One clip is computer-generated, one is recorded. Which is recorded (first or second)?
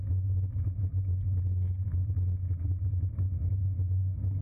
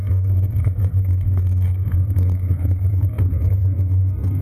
first